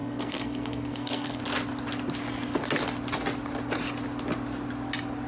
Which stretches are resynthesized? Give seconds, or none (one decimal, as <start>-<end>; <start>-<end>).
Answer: 0.0-1.4